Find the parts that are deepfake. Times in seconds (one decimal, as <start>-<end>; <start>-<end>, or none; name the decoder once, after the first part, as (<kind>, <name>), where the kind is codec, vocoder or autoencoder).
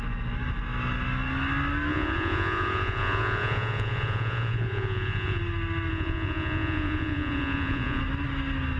1.9-5.4 (vocoder, Vocos); 5.9-8.0